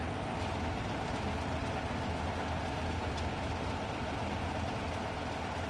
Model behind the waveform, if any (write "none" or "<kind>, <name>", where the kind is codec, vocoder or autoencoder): none